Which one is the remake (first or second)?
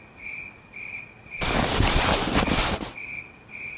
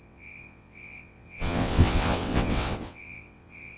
second